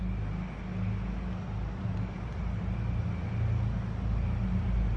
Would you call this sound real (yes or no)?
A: yes